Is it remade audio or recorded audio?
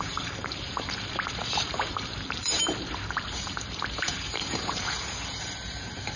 remade